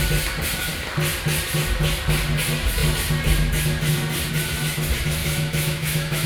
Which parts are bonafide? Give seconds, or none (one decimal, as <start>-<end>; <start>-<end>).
0.0-5.2